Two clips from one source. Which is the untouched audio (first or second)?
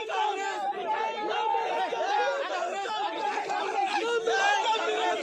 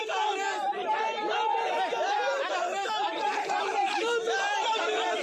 first